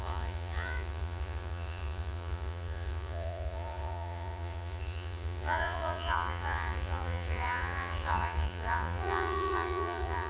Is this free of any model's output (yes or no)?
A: no